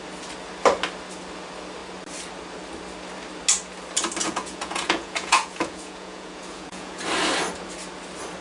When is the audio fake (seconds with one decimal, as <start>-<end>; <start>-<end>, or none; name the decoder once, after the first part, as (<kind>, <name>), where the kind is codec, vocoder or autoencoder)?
4.2-7.0 (vocoder, Vocos)